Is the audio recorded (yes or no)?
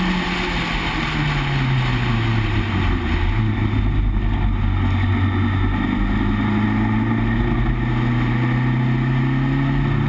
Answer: yes